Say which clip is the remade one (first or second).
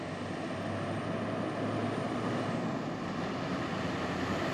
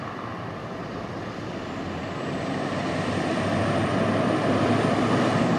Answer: second